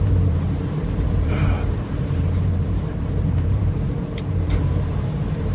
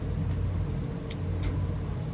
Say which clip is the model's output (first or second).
first